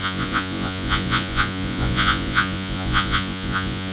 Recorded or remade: remade